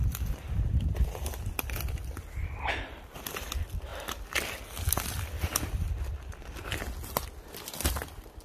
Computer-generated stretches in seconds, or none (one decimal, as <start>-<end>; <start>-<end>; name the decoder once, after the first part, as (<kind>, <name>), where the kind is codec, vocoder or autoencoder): none